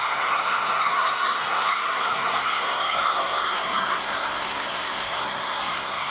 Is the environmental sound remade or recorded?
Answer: remade